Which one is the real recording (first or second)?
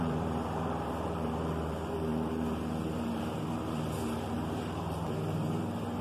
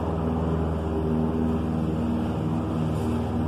second